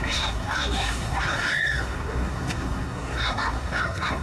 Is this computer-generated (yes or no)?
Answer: yes